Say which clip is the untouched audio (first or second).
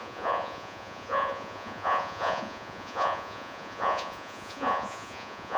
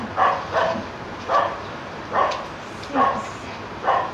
second